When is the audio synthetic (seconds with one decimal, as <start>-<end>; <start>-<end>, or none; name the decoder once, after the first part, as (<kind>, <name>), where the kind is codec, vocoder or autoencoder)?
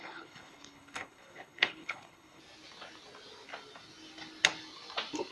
0.0-2.4 (codec, HILCodec)